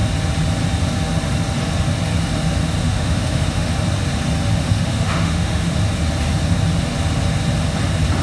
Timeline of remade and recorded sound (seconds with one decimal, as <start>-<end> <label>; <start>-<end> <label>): 0.0-2.8 recorded; 2.8-3.7 remade; 3.7-4.6 recorded; 4.6-5.8 remade; 5.8-8.2 recorded